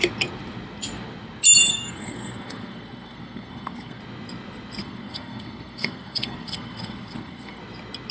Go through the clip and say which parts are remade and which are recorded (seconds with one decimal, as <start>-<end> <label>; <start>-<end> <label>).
0.0-1.7 recorded; 1.7-4.0 remade; 4.0-4.8 recorded; 4.8-7.6 remade; 7.6-8.1 recorded